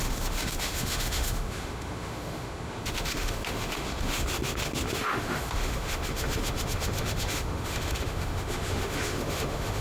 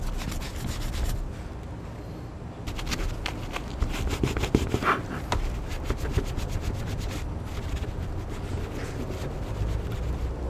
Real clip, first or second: second